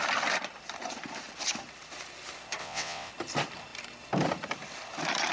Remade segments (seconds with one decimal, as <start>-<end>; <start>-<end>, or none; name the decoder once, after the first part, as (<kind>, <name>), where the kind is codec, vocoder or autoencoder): 2.6-3.1 (vocoder, WaveNeXt)